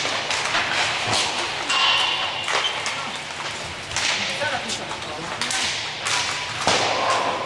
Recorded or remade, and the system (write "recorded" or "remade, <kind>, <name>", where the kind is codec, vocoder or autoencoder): recorded